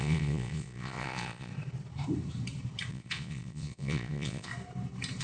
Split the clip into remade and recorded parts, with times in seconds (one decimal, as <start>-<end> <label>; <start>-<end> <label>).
0.0-1.5 remade; 1.5-2.9 recorded; 2.9-4.5 remade; 4.5-5.2 recorded